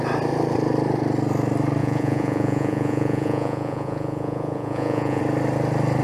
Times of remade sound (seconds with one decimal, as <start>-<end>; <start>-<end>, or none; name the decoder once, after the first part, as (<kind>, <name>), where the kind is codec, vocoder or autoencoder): 1.8-5.2 (vocoder, Vocos)